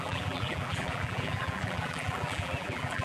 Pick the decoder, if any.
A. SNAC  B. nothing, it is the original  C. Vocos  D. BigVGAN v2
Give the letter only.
D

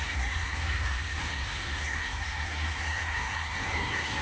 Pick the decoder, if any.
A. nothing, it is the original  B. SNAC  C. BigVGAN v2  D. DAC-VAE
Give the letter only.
B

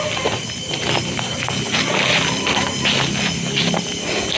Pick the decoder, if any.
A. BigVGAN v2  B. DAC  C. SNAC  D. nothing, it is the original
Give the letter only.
D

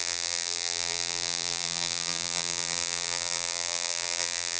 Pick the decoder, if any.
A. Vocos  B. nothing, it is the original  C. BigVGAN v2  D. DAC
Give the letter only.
C